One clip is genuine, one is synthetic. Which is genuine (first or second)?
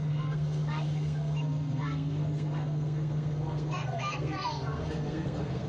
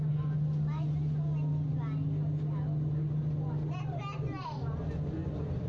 second